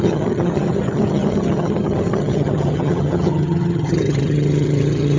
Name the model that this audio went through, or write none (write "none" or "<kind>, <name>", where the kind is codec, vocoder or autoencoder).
vocoder, HiFi-GAN